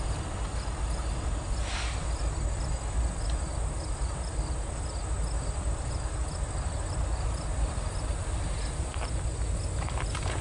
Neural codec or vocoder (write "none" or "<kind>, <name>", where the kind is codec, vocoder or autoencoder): none